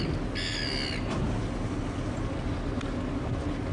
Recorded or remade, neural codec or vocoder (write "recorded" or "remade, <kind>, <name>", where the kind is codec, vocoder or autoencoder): recorded